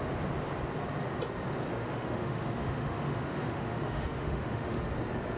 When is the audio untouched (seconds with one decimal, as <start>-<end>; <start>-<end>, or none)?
0.0-1.7; 4.9-5.4